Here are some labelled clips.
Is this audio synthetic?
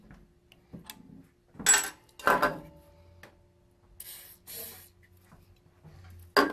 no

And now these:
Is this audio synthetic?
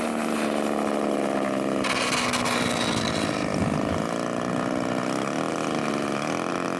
no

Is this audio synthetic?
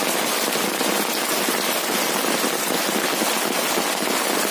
no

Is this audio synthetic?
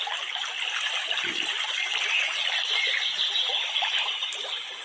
no